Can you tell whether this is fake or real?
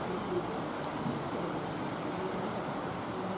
real